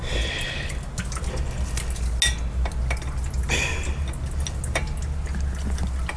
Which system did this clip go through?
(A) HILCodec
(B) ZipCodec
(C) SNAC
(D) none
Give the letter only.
D